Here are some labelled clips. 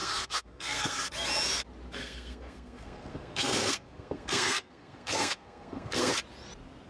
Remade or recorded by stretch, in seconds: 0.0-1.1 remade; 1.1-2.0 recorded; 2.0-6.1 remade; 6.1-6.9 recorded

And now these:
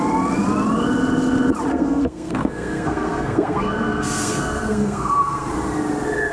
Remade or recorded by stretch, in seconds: 0.0-1.7 recorded; 1.7-5.5 remade; 5.5-6.3 recorded